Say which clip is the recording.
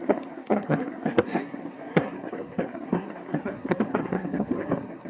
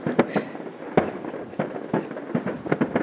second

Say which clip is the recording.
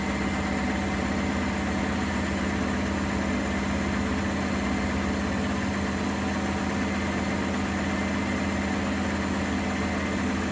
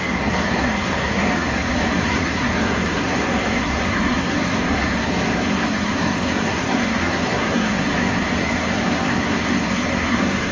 first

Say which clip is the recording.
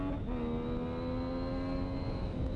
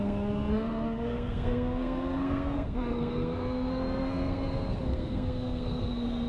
first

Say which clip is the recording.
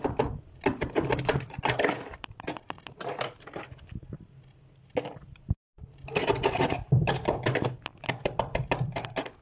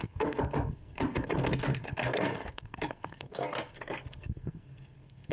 first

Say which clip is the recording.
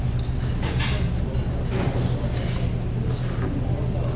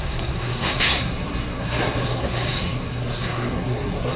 first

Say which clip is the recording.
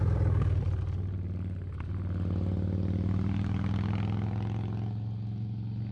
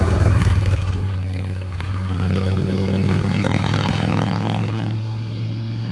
first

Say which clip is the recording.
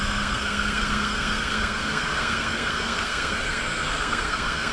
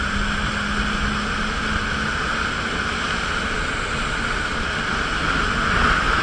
second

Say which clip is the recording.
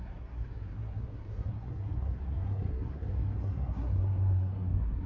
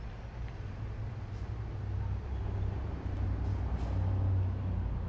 second